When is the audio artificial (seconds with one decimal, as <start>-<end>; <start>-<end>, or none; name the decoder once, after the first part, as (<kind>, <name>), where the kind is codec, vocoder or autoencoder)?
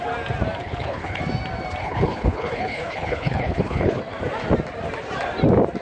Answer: 0.6-1.2 (codec, HILCodec); 1.8-4.0